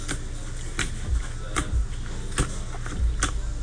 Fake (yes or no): no